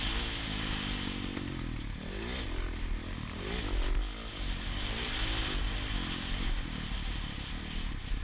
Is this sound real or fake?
real